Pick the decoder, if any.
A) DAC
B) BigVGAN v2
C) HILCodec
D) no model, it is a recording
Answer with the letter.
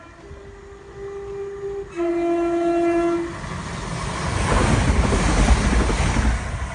D